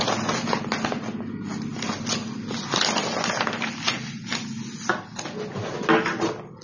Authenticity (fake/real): real